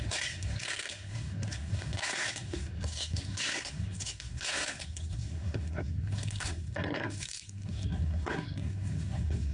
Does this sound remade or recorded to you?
remade